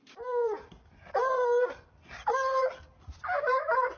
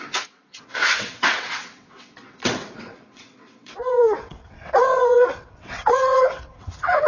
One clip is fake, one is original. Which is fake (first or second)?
second